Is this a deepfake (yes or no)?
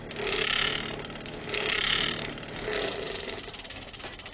no